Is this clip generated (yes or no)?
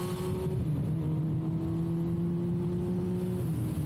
no